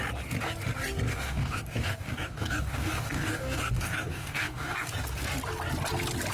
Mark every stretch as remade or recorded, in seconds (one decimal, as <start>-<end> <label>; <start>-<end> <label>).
0.0-1.1 recorded; 1.1-4.9 remade; 4.9-6.3 recorded